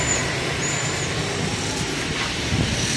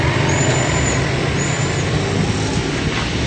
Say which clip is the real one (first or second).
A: second